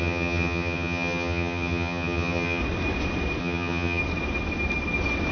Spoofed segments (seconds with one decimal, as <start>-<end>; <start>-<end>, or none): 0.0-2.6; 3.4-4.0